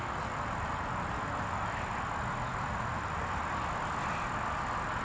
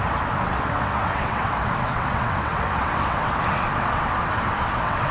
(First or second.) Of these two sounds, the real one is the first